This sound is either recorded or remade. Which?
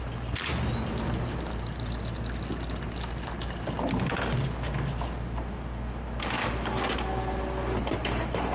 recorded